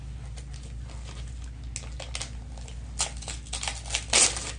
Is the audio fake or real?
real